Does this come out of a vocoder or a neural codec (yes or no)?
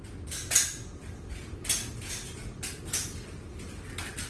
no